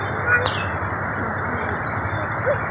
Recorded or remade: recorded